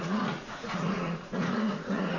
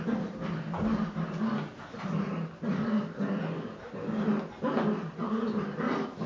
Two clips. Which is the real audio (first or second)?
second